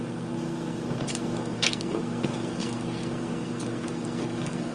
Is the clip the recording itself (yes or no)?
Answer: no